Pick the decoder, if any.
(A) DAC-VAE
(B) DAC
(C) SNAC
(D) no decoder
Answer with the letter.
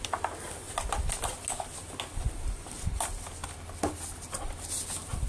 D